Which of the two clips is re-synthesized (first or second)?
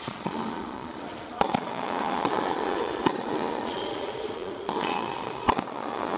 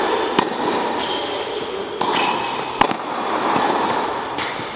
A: first